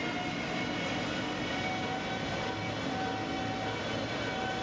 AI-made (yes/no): no